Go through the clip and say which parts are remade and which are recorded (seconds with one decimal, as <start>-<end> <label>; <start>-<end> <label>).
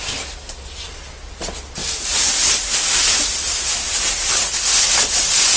0.0-5.6 recorded